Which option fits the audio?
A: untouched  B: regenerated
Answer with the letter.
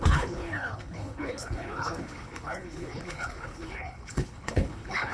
B